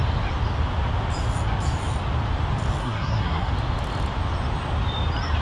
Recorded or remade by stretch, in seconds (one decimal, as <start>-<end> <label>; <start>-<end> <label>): 0.0-2.8 recorded; 2.8-3.5 remade; 3.5-5.4 recorded